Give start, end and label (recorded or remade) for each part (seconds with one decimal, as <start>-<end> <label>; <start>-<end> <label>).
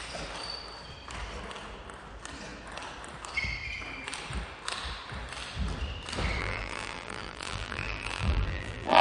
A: 0.0-6.4 recorded; 6.4-9.0 remade